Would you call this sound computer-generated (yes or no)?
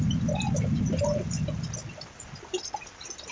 no